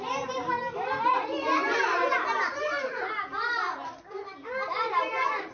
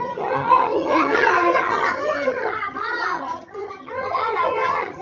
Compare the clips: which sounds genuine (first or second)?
first